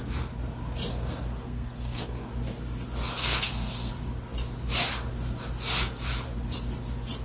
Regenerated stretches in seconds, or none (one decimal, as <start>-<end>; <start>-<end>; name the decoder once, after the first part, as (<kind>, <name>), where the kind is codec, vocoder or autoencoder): 0.9-2.3 (codec, SNAC); 3.2-3.9

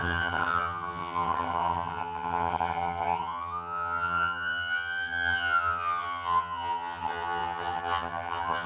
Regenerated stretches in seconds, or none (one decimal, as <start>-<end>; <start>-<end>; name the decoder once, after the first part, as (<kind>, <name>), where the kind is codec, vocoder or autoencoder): 0.0-8.7 (vocoder, HiFi-GAN)

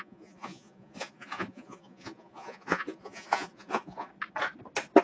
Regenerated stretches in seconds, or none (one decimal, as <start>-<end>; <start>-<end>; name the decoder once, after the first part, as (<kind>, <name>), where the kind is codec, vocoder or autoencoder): 0.0-4.1 (vocoder, Vocos)

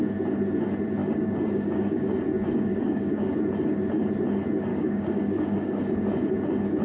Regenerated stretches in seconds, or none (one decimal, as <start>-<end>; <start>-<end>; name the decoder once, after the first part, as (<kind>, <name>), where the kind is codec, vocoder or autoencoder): 1.0-2.1 (codec, DAC); 2.7-3.4; 4.7-5.8

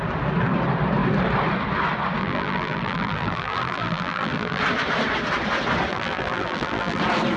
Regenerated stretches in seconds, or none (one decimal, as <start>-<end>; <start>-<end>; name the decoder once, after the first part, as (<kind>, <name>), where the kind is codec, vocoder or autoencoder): 2.2-4.6 (vocoder, BigVGAN v2); 5.9-7.0

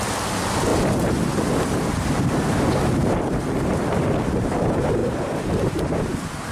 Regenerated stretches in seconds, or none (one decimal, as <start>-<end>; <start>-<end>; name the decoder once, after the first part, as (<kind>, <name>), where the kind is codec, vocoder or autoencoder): none

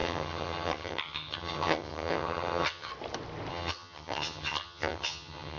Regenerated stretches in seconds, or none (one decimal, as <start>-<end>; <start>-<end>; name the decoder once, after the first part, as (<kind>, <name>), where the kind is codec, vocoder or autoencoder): 0.0-2.9 (vocoder, HiFi-GAN); 3.5-5.6

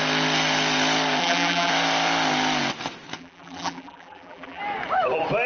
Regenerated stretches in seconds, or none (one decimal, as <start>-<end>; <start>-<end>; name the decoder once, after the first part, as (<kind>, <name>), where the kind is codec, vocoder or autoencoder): 1.2-1.7 (vocoder, BigVGAN v2); 3.2-4.6